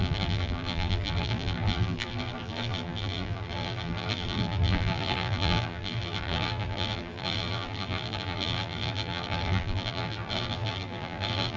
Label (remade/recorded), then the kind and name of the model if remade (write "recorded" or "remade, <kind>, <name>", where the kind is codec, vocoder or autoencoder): remade, vocoder, BigVGAN v2